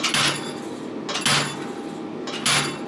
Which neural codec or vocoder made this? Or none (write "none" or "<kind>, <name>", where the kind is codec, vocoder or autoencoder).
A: none